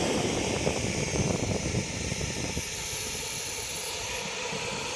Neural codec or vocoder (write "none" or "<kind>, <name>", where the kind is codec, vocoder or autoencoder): vocoder, BigVGAN v2